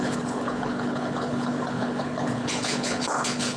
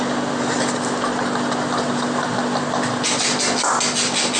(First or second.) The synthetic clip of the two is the first